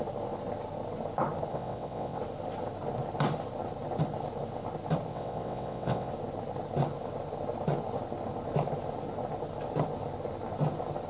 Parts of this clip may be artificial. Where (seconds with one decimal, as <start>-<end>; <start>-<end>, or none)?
1.5-2.2; 5.1-6.1